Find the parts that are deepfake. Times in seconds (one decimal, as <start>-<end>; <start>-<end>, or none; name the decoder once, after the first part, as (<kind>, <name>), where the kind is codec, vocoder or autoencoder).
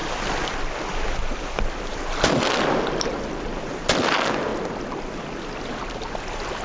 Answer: none